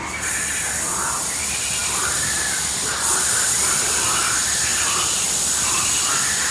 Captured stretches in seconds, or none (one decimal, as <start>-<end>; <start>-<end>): 0.0-4.7; 5.9-6.5